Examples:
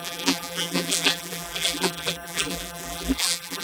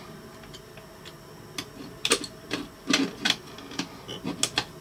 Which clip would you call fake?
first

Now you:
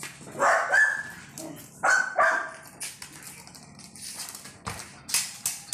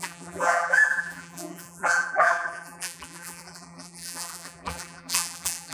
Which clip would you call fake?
second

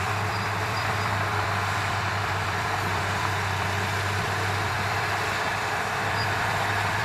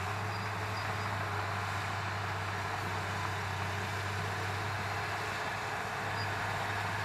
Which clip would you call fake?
first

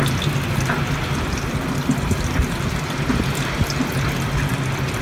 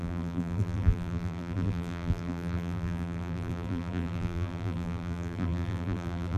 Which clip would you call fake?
second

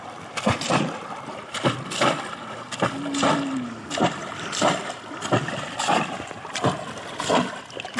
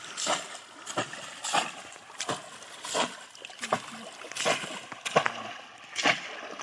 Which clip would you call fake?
first